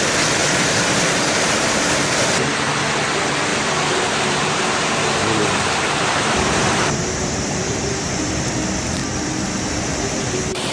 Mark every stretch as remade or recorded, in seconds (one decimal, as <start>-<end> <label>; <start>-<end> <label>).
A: 0.0-0.4 recorded; 0.4-2.1 remade; 2.1-3.5 recorded; 3.5-8.5 remade; 8.5-9.0 recorded; 9.0-10.1 remade; 10.1-10.7 recorded